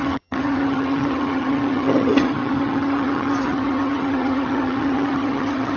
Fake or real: fake